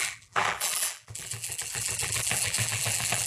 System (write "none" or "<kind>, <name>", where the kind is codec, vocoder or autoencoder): vocoder, BigVGAN v2